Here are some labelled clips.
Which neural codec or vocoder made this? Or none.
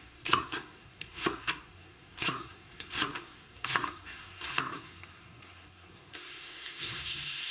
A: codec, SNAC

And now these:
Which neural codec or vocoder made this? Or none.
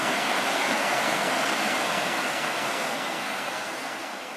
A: codec, SNAC